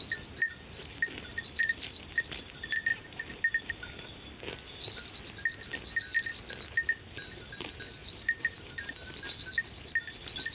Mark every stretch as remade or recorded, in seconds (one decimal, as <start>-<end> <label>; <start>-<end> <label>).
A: 0.0-8.0 recorded; 8.0-8.9 remade; 8.9-10.5 recorded